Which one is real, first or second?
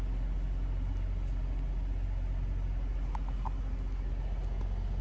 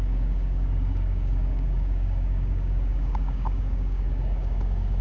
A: first